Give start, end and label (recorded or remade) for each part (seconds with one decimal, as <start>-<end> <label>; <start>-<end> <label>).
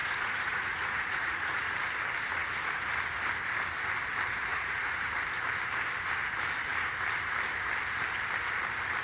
0.0-1.6 remade; 1.6-4.5 recorded; 4.5-5.2 remade; 5.2-9.0 recorded